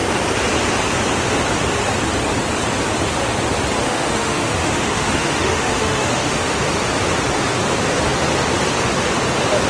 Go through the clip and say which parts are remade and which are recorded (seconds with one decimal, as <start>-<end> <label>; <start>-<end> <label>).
0.0-3.8 recorded; 3.8-6.5 remade; 6.5-9.7 recorded